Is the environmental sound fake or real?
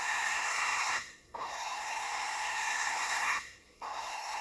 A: fake